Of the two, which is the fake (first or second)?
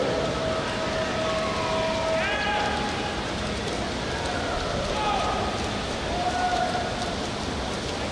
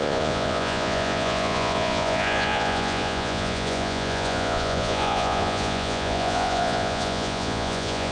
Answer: second